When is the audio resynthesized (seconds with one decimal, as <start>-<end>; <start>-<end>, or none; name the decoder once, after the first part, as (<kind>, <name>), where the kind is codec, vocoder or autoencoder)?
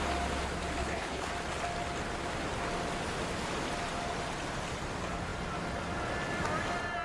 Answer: 0.8-1.3 (codec, HILCodec)